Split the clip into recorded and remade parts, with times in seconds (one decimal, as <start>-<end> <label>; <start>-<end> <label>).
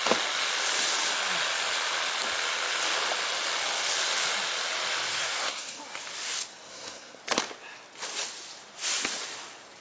0.0-5.1 recorded; 5.1-5.8 remade; 5.8-6.5 recorded; 6.5-7.2 remade; 7.2-9.8 recorded